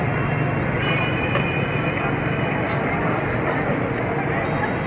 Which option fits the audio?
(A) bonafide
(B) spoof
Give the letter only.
A